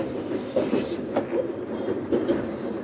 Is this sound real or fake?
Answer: fake